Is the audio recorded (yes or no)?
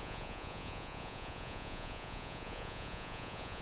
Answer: no